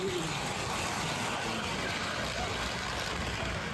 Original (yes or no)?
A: yes